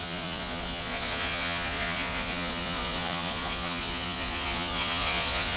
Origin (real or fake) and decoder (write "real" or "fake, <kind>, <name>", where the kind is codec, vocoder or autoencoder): fake, vocoder, Vocos